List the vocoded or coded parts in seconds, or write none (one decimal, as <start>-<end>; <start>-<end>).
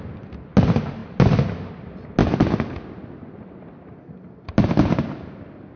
none